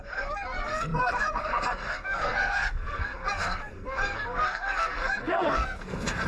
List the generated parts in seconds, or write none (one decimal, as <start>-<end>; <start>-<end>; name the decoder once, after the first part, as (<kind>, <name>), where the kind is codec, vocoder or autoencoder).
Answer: 0.0-6.3 (codec, SNAC)